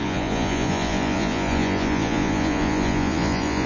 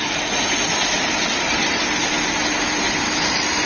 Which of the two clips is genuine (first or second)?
second